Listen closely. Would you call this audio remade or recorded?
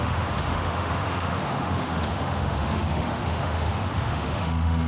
remade